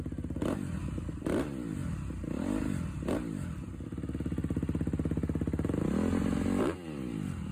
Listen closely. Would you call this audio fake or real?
real